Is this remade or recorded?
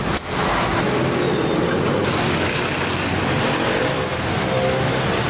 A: recorded